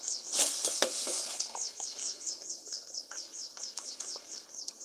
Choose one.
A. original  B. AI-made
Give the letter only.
B